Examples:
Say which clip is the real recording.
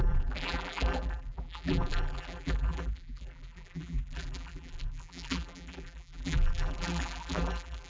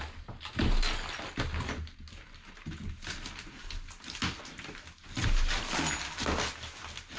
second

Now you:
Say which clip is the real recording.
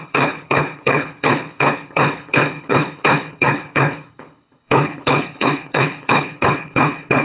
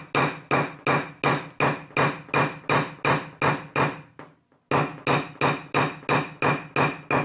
second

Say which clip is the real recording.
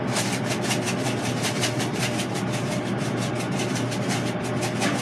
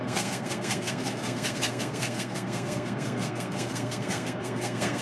first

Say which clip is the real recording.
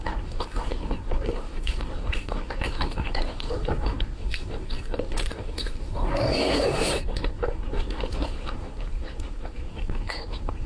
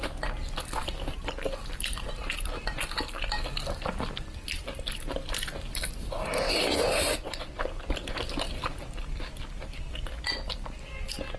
second